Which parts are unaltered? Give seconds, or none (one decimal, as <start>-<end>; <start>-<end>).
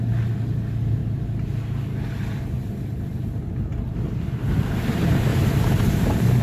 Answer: 0.0-5.3